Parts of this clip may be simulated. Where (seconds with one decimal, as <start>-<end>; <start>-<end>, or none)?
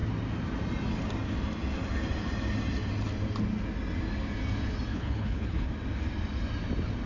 4.9-5.7